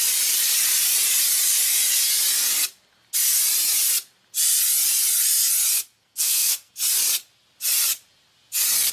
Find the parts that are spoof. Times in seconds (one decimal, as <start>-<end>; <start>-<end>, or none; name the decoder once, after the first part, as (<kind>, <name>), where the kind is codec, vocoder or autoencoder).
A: 6.0-6.7 (codec, SNAC)